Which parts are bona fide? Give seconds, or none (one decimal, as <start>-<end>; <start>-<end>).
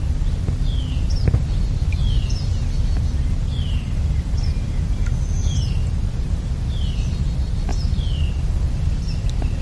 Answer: 0.0-5.4; 6.5-9.6